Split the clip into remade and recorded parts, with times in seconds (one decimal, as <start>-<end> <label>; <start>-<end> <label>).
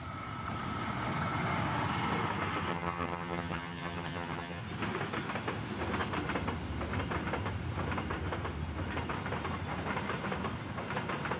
0.0-2.7 recorded; 2.7-4.6 remade; 4.6-11.4 recorded